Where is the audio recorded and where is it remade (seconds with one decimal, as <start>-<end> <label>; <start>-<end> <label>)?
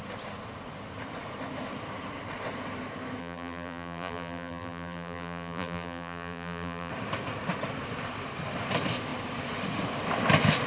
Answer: 0.0-3.2 recorded; 3.2-6.9 remade; 6.9-10.7 recorded